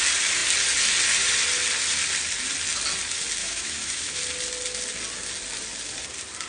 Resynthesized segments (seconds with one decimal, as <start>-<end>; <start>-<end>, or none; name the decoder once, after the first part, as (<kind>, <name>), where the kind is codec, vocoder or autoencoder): 3.4-4.2 (autoencoder, DAC-VAE)